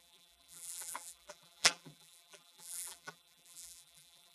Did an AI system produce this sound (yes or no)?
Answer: yes